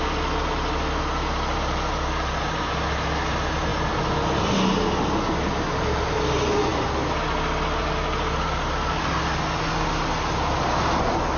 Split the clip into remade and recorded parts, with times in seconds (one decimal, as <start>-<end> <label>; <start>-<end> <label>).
0.0-11.4 recorded